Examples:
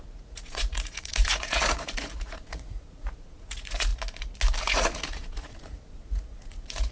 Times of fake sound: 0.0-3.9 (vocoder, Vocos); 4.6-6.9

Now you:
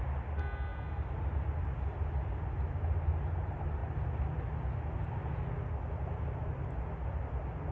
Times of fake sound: none

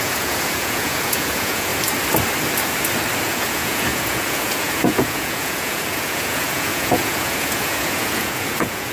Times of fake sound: 0.0-1.7 (vocoder, Vocos); 3.2-8.9

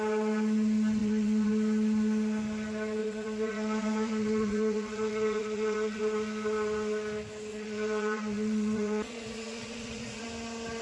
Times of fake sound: 1.0-1.5 (vocoder, Vocos); 3.0-6.0; 7.5-10.2